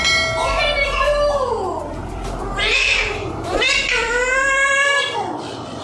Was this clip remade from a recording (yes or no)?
yes